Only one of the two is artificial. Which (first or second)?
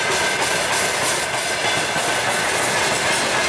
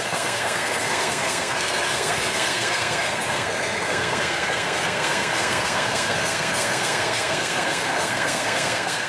second